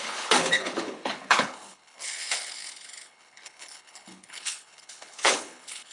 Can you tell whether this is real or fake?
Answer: fake